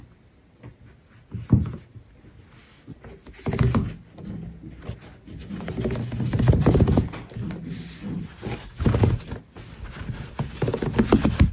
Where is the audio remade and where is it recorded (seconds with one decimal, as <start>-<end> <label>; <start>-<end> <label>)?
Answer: 0.0-11.5 recorded